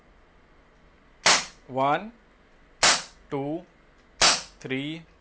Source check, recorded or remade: recorded